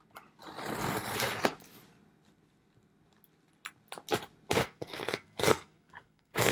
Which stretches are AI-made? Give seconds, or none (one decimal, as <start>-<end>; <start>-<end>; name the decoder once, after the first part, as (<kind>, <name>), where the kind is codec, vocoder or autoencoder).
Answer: 4.6-6.5 (codec, SNAC)